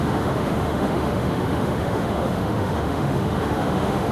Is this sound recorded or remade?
remade